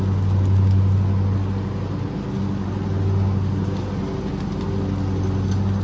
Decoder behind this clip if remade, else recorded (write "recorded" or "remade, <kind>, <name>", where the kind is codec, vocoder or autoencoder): recorded